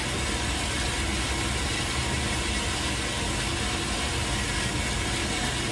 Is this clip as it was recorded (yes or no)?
yes